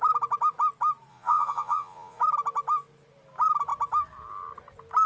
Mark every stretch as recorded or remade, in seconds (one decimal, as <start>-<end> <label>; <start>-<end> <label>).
0.0-1.1 recorded; 1.1-2.2 remade; 2.2-5.1 recorded